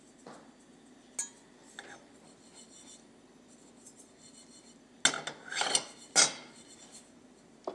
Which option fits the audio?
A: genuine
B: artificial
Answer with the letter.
A